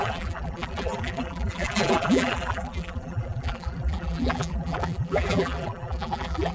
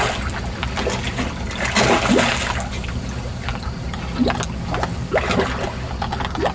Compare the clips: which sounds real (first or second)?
second